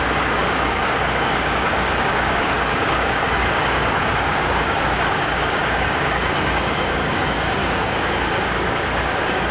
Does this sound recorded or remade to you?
remade